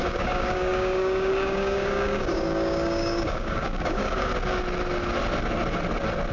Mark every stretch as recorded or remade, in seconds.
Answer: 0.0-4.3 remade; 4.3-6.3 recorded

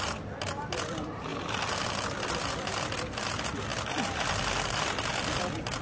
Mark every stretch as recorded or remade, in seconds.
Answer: 0.0-5.8 recorded

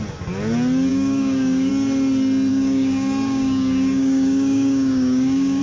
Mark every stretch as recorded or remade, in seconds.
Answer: 0.0-0.9 recorded; 0.9-1.7 remade; 1.7-2.5 recorded; 2.5-5.6 remade

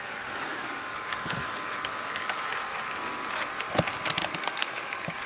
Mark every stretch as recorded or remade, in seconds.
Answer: 0.0-2.5 remade; 2.5-4.2 recorded; 4.2-5.3 remade

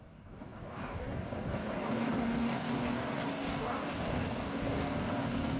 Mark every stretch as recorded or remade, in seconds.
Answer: 0.0-5.6 remade

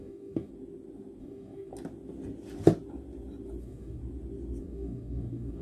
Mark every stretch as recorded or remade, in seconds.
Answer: 0.0-0.5 remade; 0.5-1.2 recorded; 1.2-1.7 remade; 1.7-3.6 recorded; 3.6-4.0 remade; 4.0-4.6 recorded; 4.6-5.6 remade

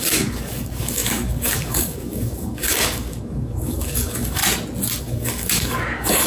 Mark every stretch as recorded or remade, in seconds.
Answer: 0.0-4.4 remade; 4.4-5.0 recorded; 5.0-6.3 remade